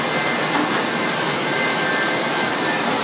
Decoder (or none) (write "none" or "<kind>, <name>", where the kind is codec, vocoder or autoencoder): none